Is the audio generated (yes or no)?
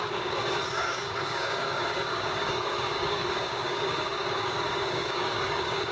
yes